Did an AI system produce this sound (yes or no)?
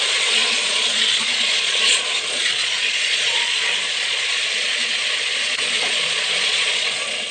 yes